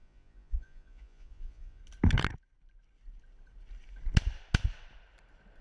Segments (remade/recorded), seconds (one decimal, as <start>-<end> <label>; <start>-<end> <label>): 0.0-1.8 remade; 1.8-5.6 recorded

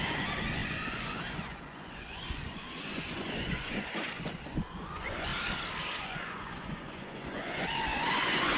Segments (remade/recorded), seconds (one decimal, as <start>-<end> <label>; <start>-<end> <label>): 0.0-5.3 remade; 5.3-6.0 recorded; 6.0-8.6 remade

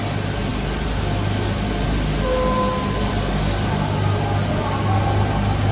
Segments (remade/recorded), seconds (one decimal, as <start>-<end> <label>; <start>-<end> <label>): 0.0-5.7 recorded

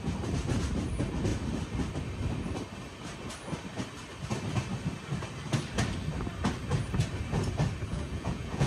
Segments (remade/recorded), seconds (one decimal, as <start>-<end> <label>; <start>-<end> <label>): 0.0-7.9 recorded; 7.9-8.7 remade

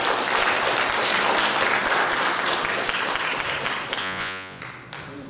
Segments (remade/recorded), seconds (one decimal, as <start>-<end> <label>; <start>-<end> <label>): 0.0-4.0 recorded; 4.0-4.6 remade; 4.6-5.3 recorded

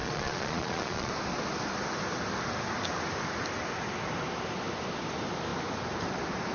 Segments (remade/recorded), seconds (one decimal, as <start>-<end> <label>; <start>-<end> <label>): 0.0-1.1 remade; 1.1-6.5 recorded